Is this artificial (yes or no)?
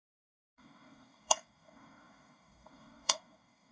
yes